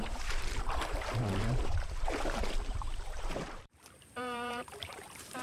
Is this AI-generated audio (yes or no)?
yes